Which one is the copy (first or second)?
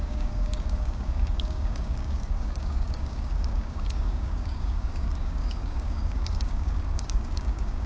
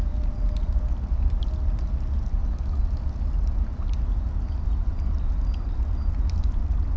first